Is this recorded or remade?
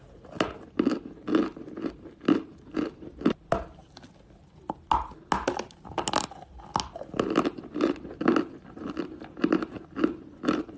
recorded